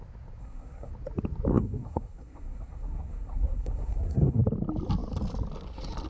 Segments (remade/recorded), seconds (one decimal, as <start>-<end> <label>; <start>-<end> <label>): 0.0-0.4 recorded; 0.4-0.9 remade; 0.9-1.5 recorded; 1.5-4.4 remade; 4.4-6.1 recorded